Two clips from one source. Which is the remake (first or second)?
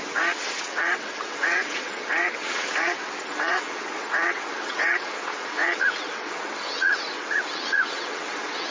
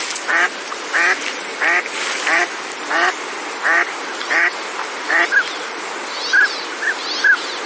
first